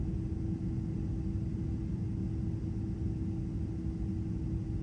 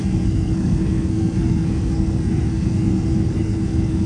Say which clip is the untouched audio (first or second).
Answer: first